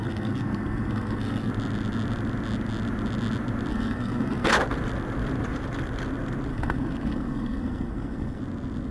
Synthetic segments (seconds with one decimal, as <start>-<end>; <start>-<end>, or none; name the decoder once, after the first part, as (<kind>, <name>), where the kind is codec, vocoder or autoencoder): 0.0-1.5 (codec, SNAC); 3.7-4.5; 6.5-8.4